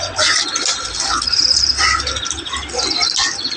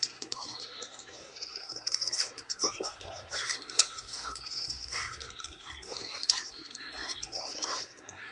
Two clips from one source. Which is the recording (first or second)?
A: first